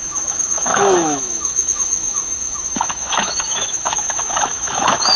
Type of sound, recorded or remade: remade